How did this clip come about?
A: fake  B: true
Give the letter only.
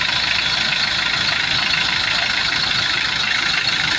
A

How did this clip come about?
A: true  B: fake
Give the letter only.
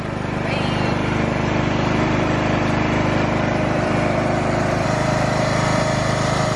B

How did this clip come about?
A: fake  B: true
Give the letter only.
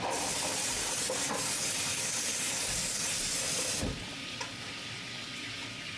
A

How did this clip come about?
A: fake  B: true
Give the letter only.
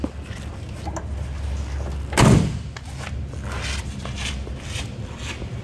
B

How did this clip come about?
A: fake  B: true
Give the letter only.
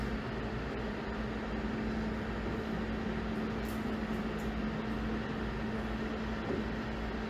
B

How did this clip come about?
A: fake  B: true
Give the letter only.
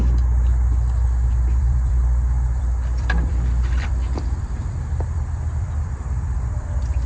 A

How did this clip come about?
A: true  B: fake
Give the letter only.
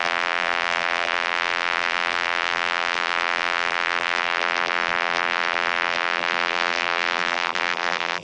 B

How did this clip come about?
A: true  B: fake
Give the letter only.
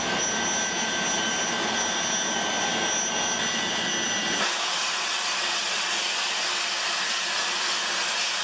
A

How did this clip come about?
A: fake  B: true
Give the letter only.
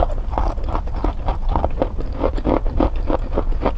B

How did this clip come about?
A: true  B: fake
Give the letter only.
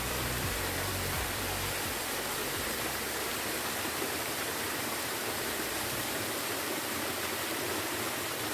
B